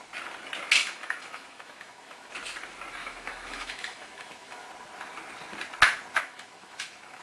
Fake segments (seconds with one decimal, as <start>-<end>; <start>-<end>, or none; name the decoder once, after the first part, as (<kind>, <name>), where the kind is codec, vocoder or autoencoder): 0.8-2.3 (autoencoder, DAC-VAE); 3.0-4.7; 6.2-7.2